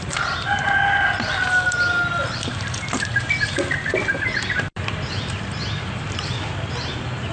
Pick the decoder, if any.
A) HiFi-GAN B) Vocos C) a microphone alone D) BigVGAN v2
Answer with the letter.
C